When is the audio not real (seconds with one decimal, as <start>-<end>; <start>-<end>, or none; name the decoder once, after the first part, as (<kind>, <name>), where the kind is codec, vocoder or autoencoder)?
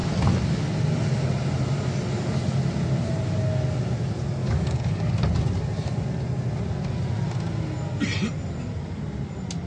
4.4-5.1 (codec, DAC)